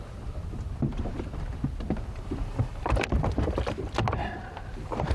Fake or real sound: real